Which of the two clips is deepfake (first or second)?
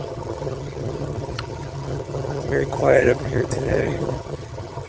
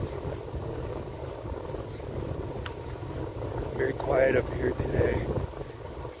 first